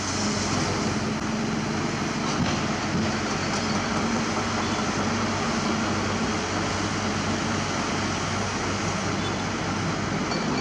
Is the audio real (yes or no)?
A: yes